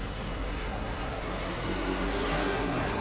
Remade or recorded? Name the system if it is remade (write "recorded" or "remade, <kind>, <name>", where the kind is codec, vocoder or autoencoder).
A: remade, codec, SNAC